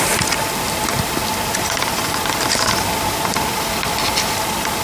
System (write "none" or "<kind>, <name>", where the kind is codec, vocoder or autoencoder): vocoder, BigVGAN v2